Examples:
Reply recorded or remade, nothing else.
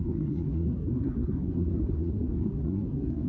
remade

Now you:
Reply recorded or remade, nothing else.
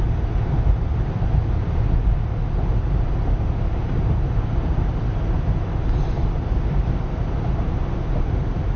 recorded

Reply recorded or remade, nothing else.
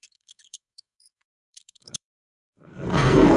remade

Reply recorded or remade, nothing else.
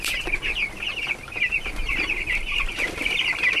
remade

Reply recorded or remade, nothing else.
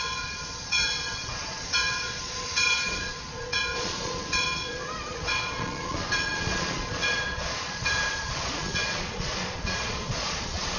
remade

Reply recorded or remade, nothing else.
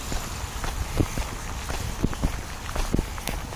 recorded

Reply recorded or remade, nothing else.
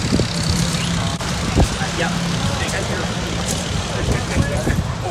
recorded